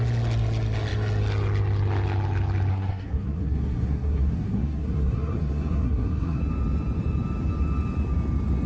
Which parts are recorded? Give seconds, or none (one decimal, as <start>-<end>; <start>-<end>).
0.0-2.7; 6.4-8.7